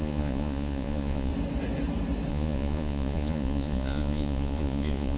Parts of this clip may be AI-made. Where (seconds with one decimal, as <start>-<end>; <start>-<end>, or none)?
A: 0.0-1.3; 2.3-5.2